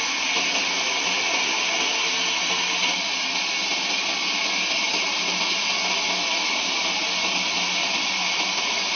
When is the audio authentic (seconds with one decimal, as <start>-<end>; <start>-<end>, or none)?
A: 0.0-9.0